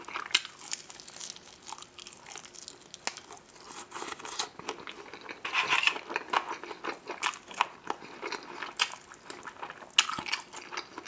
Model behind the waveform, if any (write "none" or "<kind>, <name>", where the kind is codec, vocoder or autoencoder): none